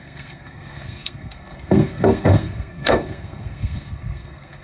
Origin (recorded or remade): remade